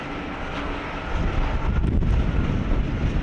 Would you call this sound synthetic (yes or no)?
no